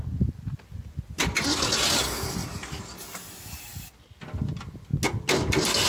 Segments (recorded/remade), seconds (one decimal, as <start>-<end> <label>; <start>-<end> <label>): 0.0-5.9 recorded